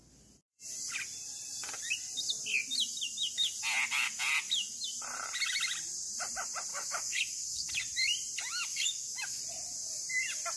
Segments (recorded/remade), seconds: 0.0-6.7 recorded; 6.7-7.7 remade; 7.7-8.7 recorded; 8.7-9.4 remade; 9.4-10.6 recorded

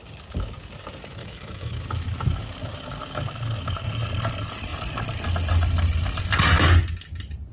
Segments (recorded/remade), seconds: 0.0-1.2 recorded; 1.2-1.8 remade; 1.8-7.5 recorded

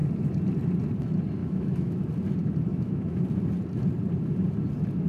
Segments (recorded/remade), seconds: 0.0-1.4 recorded; 1.4-2.0 remade; 2.0-2.7 recorded; 2.7-3.2 remade; 3.2-5.1 recorded

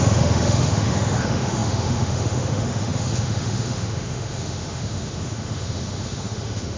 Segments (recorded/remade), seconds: 0.0-6.8 remade

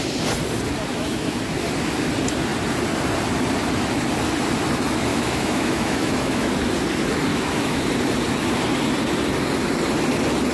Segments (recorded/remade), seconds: 0.0-0.9 recorded; 0.9-1.4 remade; 1.4-5.1 recorded; 5.1-6.5 remade; 6.5-7.3 recorded; 7.3-7.8 remade; 7.8-10.5 recorded

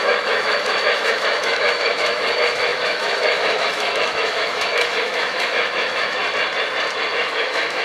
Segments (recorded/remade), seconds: 0.0-6.2 remade; 6.2-7.1 recorded; 7.1-7.8 remade